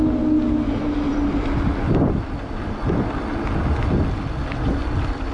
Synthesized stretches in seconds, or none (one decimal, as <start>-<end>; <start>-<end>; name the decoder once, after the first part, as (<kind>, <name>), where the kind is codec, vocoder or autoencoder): none